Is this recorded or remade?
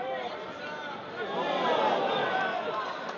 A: remade